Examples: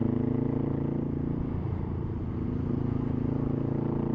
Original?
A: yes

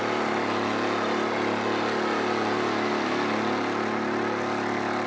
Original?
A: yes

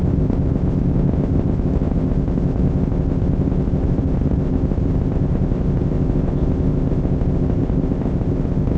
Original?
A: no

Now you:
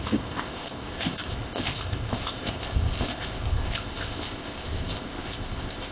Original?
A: no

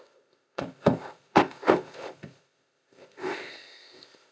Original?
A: no